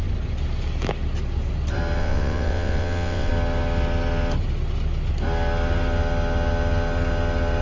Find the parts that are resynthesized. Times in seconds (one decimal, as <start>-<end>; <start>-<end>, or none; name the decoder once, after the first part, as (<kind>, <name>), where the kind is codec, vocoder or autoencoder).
2.0-3.3 (vocoder, WaveNeXt)